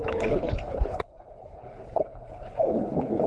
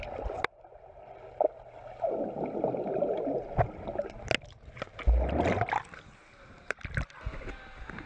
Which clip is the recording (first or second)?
second